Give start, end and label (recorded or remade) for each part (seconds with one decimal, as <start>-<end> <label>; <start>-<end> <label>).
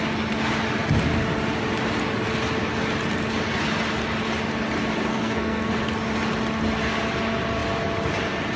0.0-5.1 recorded; 5.1-5.7 remade; 5.7-8.6 recorded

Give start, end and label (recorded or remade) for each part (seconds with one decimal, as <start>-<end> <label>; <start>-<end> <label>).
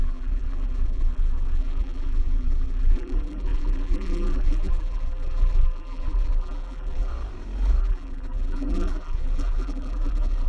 0.0-7.1 remade; 7.1-7.8 recorded; 7.8-10.5 remade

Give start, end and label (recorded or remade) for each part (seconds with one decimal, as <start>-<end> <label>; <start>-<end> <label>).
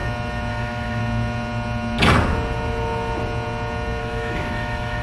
0.0-0.5 recorded; 0.5-1.0 remade; 1.0-4.0 recorded; 4.0-5.0 remade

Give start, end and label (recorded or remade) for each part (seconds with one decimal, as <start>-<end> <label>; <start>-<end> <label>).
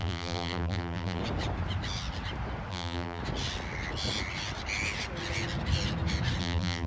0.0-1.2 remade; 1.2-2.7 recorded; 2.7-3.2 remade; 3.2-6.4 recorded; 6.4-6.9 remade